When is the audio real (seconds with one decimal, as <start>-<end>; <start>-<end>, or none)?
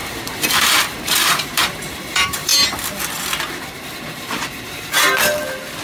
2.5-5.8